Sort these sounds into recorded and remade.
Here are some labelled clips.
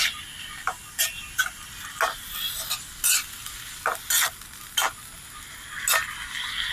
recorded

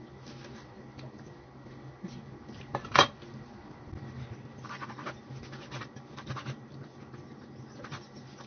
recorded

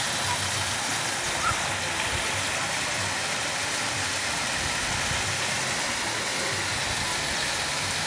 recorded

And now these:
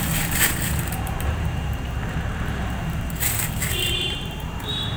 remade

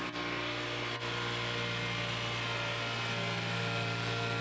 recorded